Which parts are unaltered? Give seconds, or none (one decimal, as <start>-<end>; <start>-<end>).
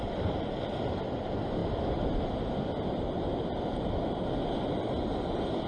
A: 0.0-5.7